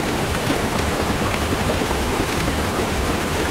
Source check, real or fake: fake